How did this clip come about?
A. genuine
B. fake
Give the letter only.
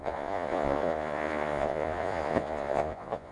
B